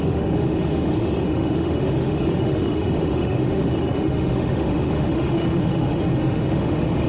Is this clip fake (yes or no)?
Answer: yes